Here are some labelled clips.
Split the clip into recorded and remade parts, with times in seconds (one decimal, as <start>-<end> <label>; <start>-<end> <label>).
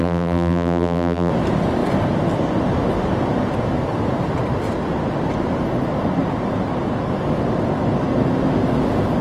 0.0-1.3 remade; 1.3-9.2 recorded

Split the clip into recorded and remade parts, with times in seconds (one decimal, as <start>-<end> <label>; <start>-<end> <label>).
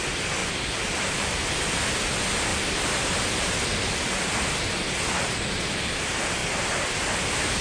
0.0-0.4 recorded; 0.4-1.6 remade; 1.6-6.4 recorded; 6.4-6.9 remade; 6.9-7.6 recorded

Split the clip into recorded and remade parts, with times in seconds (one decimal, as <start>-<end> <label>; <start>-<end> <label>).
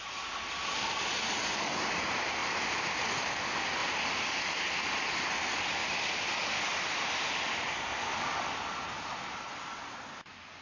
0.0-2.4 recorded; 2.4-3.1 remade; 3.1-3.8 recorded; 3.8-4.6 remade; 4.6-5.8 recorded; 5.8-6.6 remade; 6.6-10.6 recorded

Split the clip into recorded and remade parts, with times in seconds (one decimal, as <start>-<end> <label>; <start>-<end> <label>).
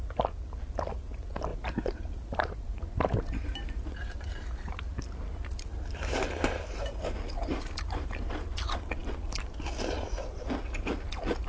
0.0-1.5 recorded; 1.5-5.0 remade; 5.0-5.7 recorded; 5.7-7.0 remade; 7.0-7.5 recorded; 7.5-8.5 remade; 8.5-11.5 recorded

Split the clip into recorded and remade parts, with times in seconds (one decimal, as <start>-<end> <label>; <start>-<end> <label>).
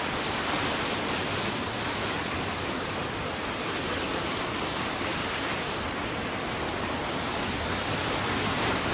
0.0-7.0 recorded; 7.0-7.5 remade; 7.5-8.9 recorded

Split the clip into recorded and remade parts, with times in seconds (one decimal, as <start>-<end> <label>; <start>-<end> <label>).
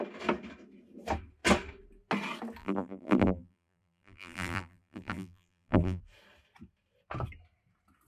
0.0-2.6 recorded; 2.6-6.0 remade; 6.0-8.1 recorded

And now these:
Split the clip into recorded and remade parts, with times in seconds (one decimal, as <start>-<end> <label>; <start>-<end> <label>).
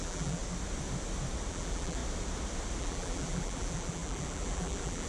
0.0-0.4 remade; 0.4-1.5 recorded; 1.5-2.0 remade; 2.0-2.8 recorded; 2.8-5.1 remade